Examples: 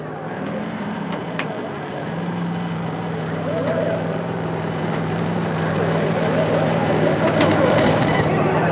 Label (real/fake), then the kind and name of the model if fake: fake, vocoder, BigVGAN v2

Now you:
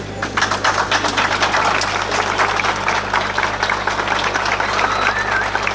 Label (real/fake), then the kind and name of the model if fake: real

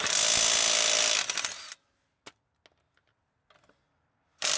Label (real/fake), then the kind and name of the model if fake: real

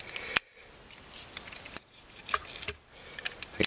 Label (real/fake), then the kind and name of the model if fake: real